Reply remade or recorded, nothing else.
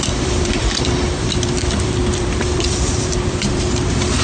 remade